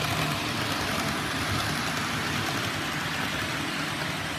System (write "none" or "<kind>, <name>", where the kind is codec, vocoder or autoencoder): vocoder, BigVGAN v2